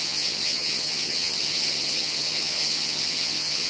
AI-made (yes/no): yes